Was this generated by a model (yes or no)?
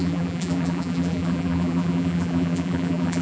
yes